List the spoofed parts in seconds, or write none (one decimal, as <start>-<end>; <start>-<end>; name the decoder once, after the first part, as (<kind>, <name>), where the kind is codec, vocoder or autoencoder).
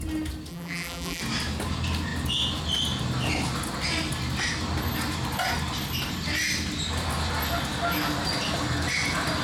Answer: 0.5-1.2 (vocoder, BigVGAN v2)